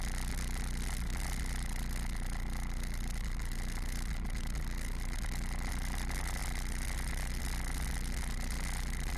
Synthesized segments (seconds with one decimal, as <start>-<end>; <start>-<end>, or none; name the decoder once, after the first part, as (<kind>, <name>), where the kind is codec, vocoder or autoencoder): none